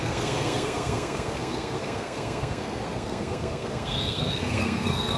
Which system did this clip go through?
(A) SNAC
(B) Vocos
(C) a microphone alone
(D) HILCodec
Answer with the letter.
A